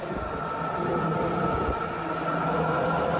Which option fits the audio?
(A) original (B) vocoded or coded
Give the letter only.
A